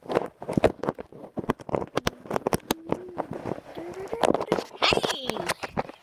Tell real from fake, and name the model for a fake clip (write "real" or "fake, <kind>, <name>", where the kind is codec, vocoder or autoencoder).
real